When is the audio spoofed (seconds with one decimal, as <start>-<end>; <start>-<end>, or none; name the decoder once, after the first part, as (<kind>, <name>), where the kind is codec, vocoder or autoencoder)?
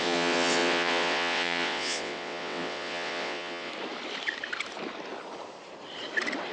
0.0-3.7 (vocoder, WaveNeXt)